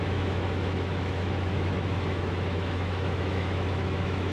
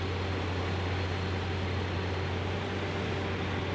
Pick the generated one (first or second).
first